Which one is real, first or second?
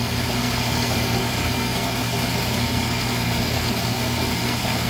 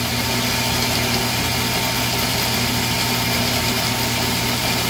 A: second